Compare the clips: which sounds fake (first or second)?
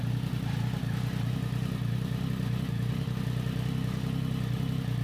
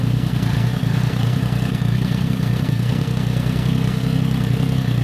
second